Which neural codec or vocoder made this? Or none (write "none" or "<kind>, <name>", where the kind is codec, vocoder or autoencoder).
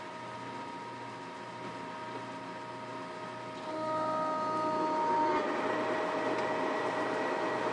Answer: none